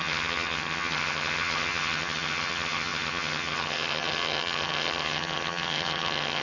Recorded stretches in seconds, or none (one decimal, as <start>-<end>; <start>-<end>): none